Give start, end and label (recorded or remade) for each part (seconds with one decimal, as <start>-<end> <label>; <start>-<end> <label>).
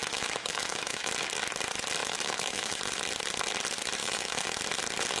0.0-1.1 remade; 1.1-2.0 recorded; 2.0-2.8 remade; 2.8-4.0 recorded; 4.0-4.6 remade; 4.6-5.2 recorded